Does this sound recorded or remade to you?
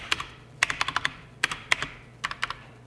remade